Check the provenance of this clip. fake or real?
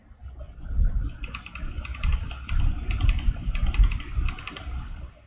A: real